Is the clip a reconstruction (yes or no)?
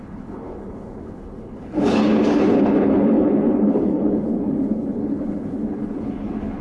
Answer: yes